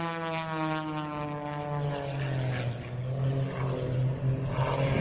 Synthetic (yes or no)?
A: no